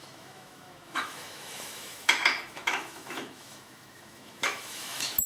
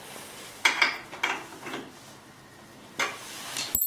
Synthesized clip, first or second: first